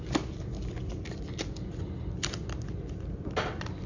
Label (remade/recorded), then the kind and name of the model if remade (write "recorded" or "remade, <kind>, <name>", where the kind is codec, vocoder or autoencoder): recorded